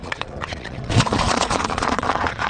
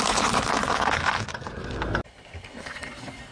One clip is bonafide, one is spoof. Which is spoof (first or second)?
first